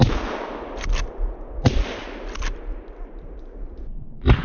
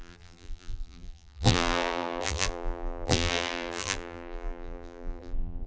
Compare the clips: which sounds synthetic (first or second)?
second